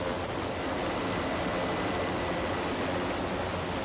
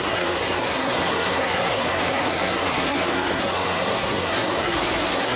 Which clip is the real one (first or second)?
first